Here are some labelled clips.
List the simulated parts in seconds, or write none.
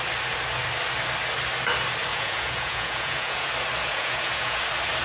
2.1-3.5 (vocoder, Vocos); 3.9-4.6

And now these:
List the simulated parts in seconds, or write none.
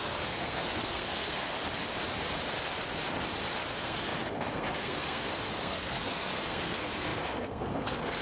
0.0-1.5 (codec, SNAC); 3.6-8.2